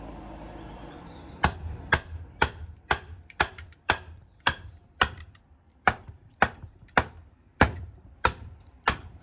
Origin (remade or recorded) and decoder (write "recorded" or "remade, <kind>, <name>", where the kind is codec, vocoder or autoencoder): remade, vocoder, BigVGAN v2